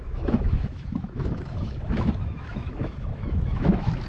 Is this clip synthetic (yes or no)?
yes